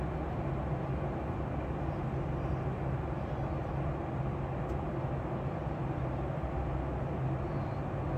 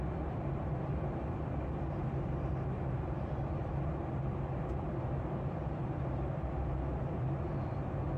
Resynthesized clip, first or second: second